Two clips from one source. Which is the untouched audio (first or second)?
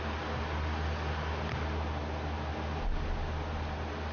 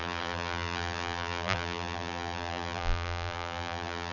first